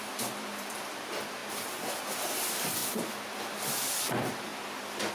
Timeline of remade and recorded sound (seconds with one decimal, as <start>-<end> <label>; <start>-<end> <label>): 0.0-1.4 remade; 1.4-2.0 recorded; 2.0-2.8 remade; 2.8-3.5 recorded; 3.5-4.5 remade; 4.5-5.1 recorded